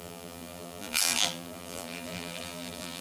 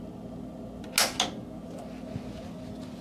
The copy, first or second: first